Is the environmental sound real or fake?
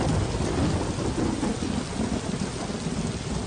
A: real